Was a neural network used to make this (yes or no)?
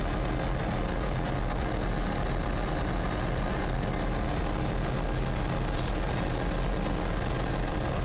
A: no